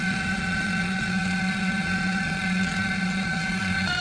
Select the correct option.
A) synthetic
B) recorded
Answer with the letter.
A